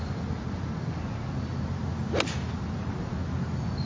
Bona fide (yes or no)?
yes